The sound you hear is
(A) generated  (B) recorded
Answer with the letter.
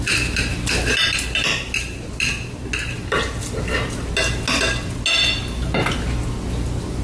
B